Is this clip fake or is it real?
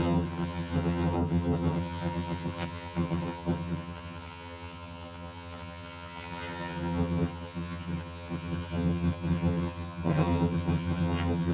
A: fake